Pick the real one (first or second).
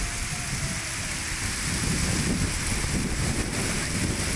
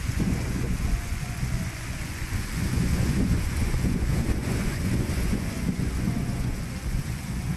first